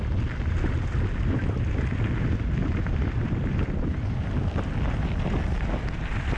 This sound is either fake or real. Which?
real